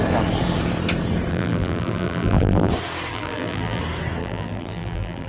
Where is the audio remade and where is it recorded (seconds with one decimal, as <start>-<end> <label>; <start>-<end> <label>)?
0.0-1.3 recorded; 1.3-2.7 remade; 2.7-3.1 recorded; 3.1-3.8 remade; 3.8-4.2 recorded; 4.2-5.3 remade